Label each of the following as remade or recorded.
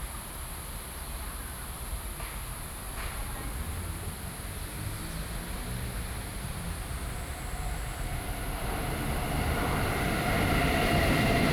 recorded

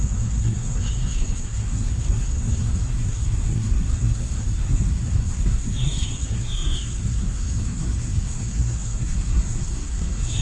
remade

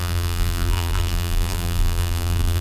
remade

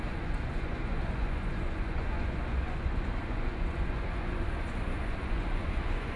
remade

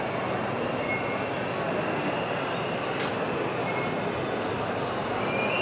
recorded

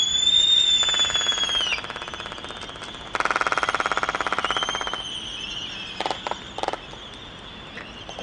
recorded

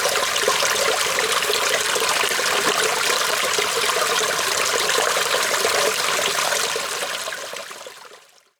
recorded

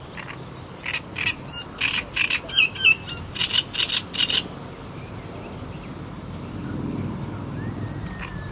recorded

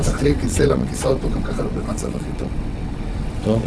remade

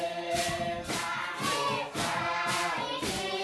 recorded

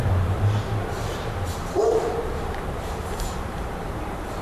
remade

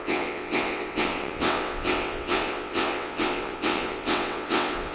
remade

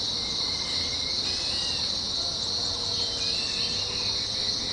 recorded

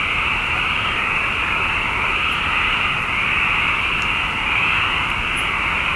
remade